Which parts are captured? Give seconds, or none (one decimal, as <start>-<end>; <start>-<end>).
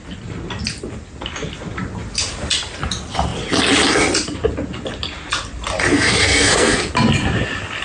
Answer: 0.0-5.9; 6.9-7.8